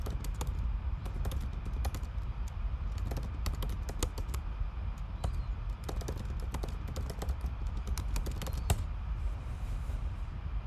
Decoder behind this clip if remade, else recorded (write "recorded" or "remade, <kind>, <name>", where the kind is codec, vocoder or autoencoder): recorded